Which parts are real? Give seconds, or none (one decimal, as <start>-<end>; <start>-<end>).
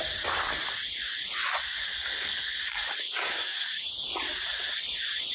0.0-1.9; 2.6-5.3